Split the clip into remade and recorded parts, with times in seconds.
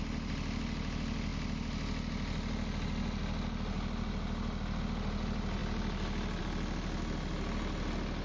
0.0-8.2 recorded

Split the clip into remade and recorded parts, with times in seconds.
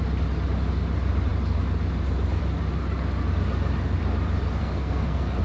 0.0-4.6 recorded; 4.6-5.4 remade